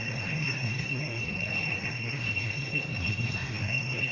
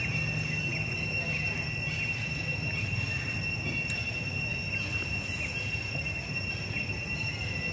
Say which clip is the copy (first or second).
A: first